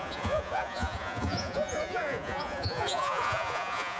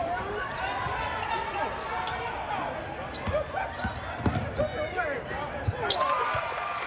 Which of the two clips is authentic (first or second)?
second